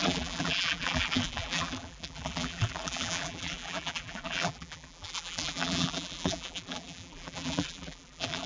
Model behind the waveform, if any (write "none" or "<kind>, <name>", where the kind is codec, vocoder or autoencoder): vocoder, BigVGAN v2